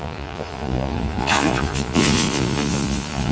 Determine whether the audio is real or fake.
fake